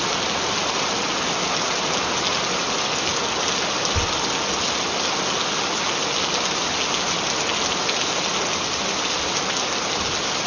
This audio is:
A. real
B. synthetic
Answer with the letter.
A